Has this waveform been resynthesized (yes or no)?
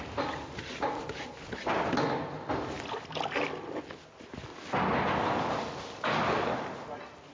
no